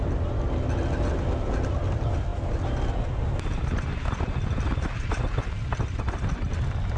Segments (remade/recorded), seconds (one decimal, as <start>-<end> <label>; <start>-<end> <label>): 0.0-7.0 recorded